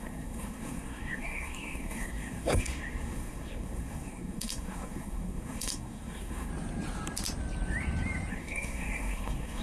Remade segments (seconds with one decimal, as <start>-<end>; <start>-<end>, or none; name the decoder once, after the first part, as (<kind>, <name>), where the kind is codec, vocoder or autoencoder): 0.0-6.5 (codec, SNAC); 8.3-9.6